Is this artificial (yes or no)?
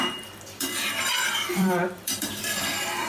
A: yes